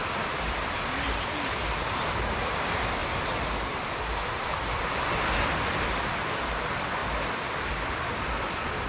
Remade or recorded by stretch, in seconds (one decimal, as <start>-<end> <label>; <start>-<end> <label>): 0.0-3.0 remade; 3.0-4.8 recorded; 4.8-7.0 remade; 7.0-7.6 recorded; 7.6-8.9 remade